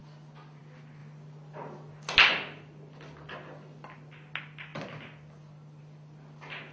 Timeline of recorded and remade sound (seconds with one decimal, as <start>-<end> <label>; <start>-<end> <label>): 0.0-6.7 recorded